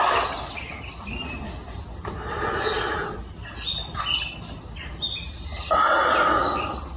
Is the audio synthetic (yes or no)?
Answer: no